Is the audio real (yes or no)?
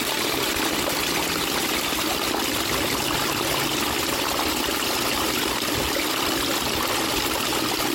yes